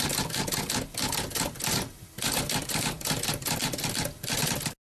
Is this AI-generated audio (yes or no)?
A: no